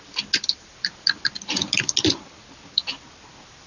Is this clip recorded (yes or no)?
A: yes